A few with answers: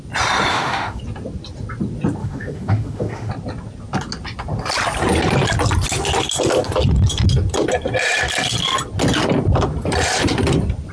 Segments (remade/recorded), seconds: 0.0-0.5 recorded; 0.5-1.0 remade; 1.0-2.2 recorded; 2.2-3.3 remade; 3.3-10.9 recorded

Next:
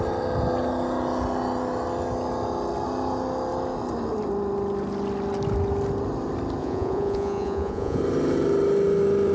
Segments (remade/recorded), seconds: 0.0-6.6 recorded; 6.6-8.0 remade; 8.0-9.3 recorded

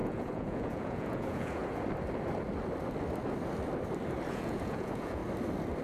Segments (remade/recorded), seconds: 0.0-1.6 remade; 1.6-4.3 recorded; 4.3-5.2 remade; 5.2-5.8 recorded

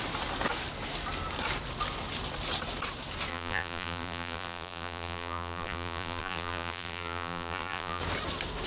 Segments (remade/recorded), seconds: 0.0-3.3 recorded; 3.3-8.0 remade; 8.0-8.7 recorded